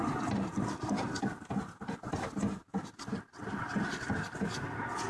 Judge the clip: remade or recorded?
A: recorded